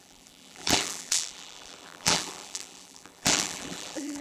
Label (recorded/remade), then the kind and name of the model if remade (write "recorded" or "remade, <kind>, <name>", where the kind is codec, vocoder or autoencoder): remade, vocoder, BigVGAN v2